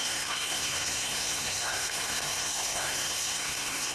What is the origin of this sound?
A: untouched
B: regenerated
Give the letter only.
B